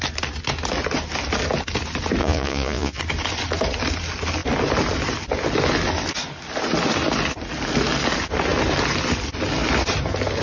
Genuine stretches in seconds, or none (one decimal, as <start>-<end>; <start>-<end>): 0.0-2.2; 3.0-10.4